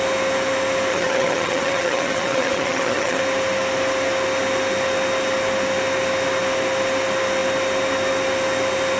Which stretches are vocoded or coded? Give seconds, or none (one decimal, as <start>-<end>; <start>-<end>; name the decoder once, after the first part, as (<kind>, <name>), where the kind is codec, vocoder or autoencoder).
0.9-3.2 (vocoder, HiFi-GAN)